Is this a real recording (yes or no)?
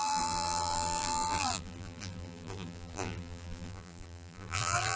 no